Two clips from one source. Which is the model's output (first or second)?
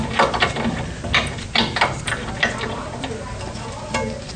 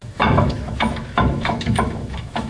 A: second